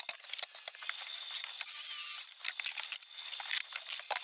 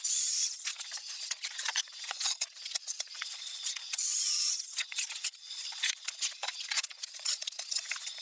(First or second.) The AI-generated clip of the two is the second